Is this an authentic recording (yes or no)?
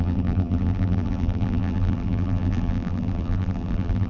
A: no